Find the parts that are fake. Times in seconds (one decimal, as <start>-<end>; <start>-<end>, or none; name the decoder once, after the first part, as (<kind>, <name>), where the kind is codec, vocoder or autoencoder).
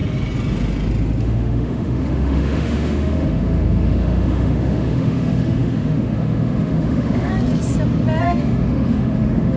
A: 1.2-7.3 (autoencoder, DAC-VAE); 8.2-9.6